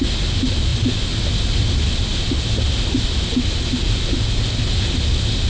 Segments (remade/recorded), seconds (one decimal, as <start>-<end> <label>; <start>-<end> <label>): 0.0-5.5 recorded